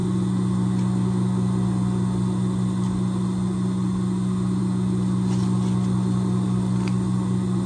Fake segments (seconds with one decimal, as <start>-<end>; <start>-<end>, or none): none